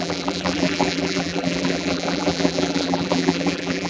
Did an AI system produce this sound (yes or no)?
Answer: yes